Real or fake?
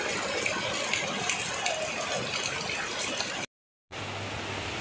real